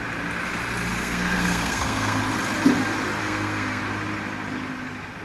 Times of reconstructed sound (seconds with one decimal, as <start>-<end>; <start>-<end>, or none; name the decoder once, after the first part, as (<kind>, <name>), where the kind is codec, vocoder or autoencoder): 0.9-2.2 (codec, SNAC); 3.2-3.8